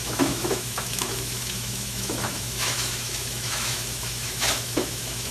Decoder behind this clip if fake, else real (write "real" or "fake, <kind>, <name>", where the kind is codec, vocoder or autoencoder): fake, autoencoder, DAC-VAE